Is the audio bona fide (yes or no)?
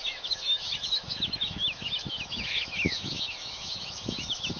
no